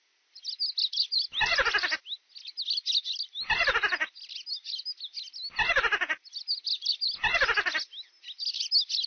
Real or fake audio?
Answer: real